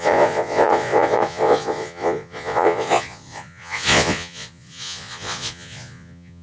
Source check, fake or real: fake